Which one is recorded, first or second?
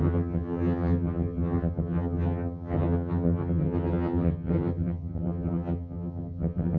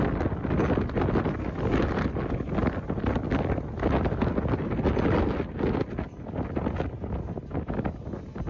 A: second